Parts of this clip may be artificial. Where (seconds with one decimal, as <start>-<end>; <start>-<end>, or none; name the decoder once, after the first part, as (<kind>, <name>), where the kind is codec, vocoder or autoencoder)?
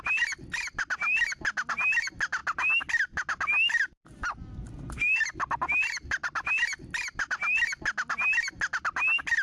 none